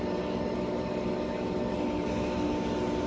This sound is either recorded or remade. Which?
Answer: recorded